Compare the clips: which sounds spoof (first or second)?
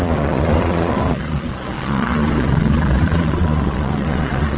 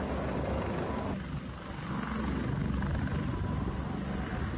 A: first